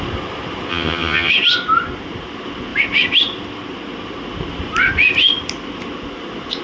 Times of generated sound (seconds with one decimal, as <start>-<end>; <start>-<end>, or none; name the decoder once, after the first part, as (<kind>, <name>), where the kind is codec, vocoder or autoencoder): 0.7-1.3 (vocoder, HiFi-GAN)